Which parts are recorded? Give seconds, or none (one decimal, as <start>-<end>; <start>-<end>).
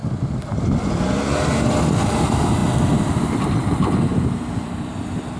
0.0-4.1; 5.0-5.4